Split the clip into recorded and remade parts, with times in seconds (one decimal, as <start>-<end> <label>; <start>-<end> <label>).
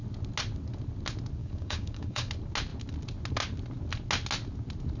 0.0-1.4 recorded; 1.4-2.3 remade; 2.3-5.0 recorded